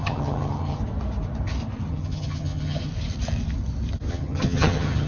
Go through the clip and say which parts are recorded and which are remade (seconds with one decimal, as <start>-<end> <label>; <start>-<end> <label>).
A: 0.0-0.8 remade; 0.8-1.9 recorded; 1.9-2.9 remade; 2.9-4.1 recorded; 4.1-5.1 remade